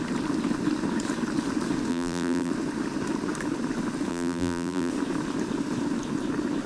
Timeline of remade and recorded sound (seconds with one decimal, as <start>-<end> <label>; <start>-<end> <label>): 0.0-1.9 recorded; 1.9-2.5 remade; 2.5-4.1 recorded; 4.1-4.9 remade; 4.9-6.7 recorded